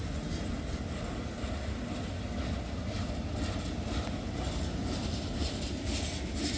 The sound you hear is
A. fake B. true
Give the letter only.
B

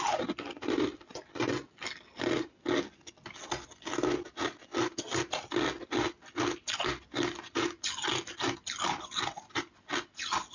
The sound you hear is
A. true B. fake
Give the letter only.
A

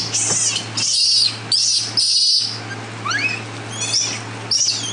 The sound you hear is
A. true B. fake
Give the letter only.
A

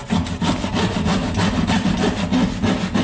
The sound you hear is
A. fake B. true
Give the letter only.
B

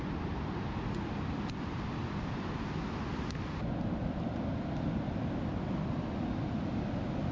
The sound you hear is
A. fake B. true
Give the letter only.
B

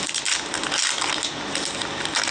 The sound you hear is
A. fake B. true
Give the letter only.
B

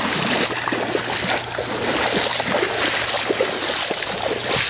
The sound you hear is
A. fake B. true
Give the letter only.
B